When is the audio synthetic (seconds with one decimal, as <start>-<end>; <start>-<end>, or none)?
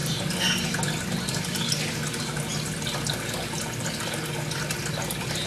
0.0-1.7